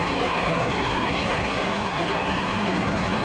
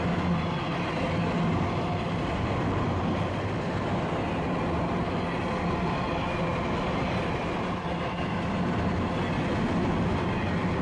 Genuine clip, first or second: second